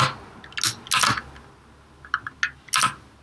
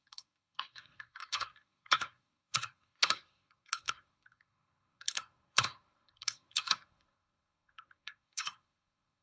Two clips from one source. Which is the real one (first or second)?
first